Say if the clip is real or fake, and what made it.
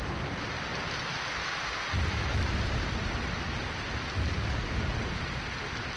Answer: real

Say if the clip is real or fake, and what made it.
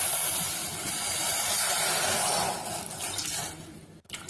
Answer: real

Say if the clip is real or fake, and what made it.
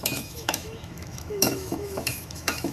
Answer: fake, autoencoder, DAC-VAE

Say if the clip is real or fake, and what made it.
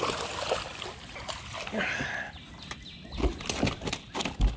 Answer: real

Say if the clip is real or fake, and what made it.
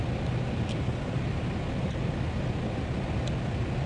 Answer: real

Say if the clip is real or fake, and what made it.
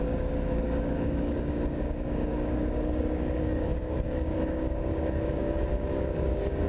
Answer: fake, codec, DAC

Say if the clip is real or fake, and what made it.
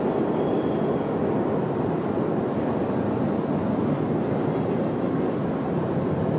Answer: real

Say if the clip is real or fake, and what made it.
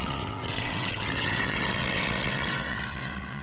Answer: fake, vocoder, WaveNeXt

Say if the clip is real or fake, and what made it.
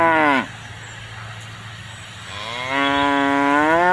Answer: real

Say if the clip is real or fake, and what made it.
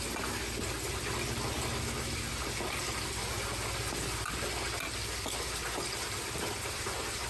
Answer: real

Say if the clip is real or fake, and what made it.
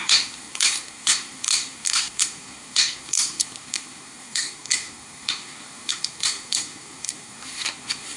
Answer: fake, codec, SNAC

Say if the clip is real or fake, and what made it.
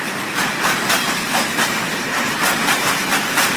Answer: fake, vocoder, BigVGAN v2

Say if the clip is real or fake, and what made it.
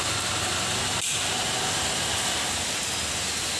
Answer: real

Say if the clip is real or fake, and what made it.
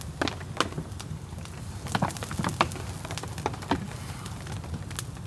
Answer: real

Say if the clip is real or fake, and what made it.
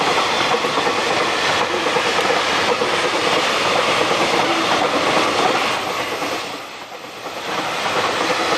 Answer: real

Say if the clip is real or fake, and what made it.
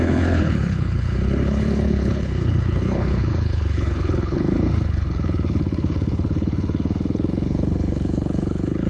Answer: fake, codec, HILCodec